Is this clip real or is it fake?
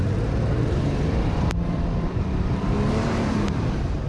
fake